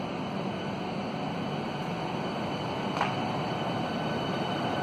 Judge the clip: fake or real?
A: real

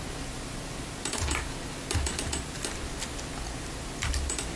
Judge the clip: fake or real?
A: real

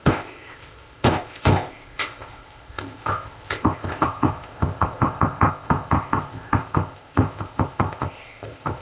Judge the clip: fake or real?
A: fake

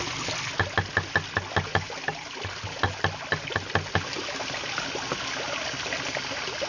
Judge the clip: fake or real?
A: real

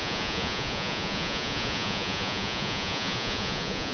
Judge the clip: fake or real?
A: fake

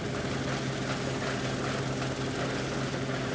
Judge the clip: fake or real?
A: real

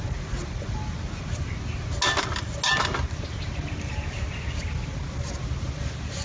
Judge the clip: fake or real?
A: real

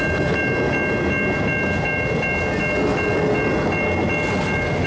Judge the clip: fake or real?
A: real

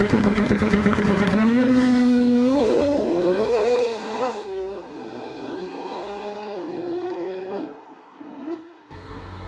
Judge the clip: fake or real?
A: fake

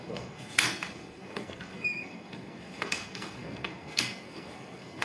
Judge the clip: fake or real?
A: fake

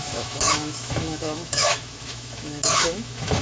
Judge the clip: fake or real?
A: fake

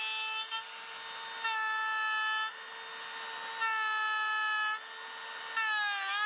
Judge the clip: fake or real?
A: real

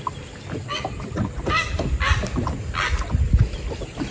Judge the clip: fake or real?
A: real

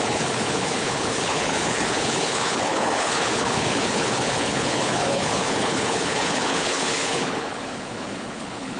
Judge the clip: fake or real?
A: fake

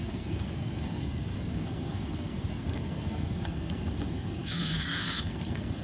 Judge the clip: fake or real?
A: fake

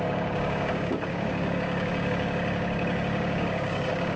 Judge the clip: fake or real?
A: fake